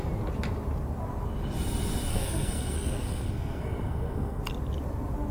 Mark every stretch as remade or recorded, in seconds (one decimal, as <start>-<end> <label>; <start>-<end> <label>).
0.0-2.1 recorded; 2.1-4.4 remade; 4.4-5.3 recorded